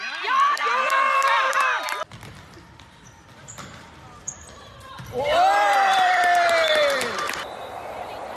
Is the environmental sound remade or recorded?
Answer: remade